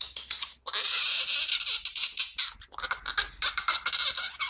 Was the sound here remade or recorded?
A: recorded